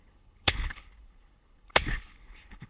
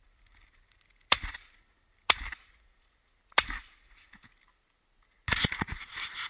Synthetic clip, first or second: first